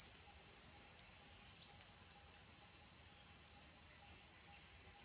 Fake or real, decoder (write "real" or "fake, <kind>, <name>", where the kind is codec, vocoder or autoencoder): real